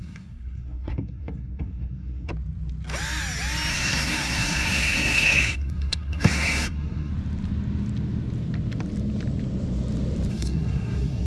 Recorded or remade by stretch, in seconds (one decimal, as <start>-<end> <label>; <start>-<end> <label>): 0.0-2.3 remade; 2.3-3.7 recorded; 3.7-7.1 remade; 7.1-10.3 recorded; 10.3-11.3 remade